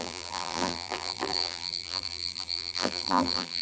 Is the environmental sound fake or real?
fake